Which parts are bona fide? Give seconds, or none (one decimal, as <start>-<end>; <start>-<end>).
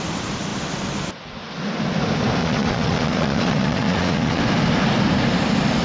0.0-2.4; 4.4-5.8